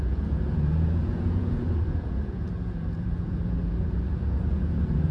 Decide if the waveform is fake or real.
fake